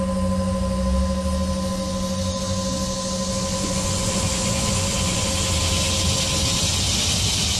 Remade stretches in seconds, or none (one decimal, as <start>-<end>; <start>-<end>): 3.5-5.3